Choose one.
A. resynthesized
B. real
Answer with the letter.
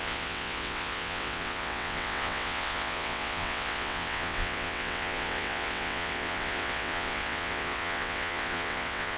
A